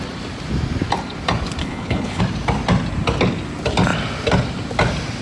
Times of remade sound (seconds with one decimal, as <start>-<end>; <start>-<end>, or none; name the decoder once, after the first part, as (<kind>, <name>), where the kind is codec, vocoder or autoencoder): 1.6-2.2 (codec, HILCodec)